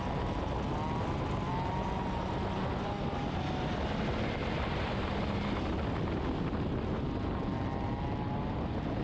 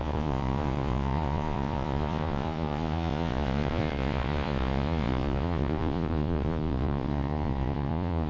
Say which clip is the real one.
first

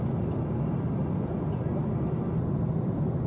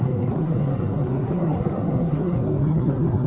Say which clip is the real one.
first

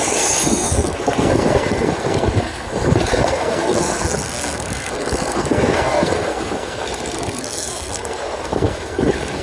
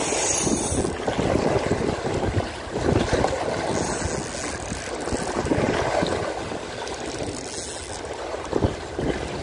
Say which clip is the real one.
second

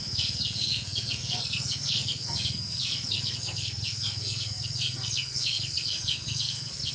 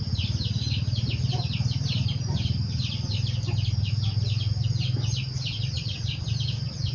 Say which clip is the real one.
second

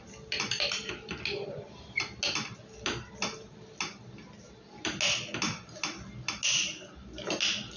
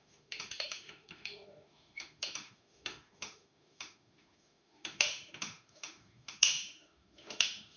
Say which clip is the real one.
first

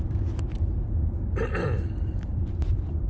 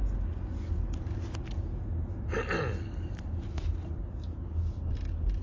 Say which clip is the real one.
second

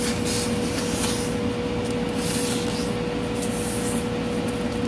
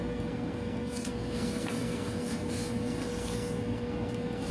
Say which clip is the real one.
first